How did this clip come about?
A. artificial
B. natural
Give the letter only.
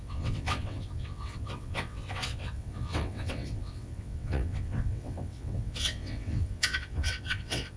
A